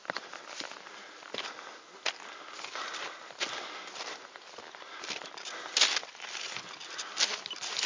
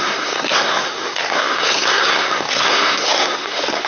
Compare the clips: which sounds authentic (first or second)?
first